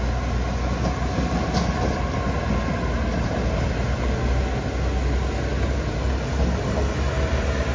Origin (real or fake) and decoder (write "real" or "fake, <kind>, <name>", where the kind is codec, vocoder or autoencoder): real